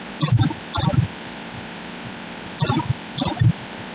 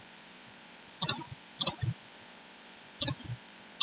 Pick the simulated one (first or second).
second